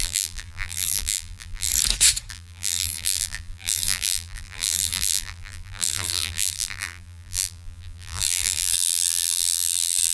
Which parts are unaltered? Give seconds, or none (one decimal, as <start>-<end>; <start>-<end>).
1.7-2.3